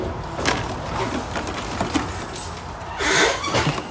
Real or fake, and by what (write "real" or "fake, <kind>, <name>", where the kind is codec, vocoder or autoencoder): real